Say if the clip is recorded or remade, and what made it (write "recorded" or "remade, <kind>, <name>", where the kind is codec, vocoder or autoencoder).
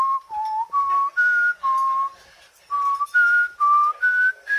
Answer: recorded